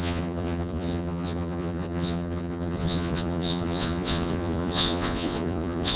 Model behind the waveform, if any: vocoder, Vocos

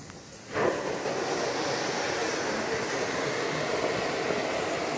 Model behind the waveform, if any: none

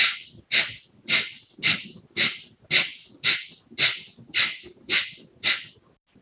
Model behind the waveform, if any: none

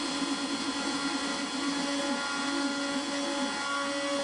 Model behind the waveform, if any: none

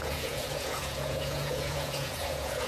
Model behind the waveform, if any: vocoder, Vocos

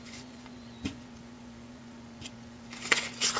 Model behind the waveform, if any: vocoder, Vocos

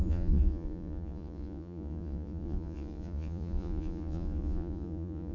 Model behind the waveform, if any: vocoder, Vocos